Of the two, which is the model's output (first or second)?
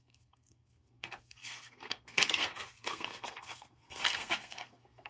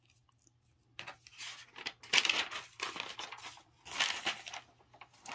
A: first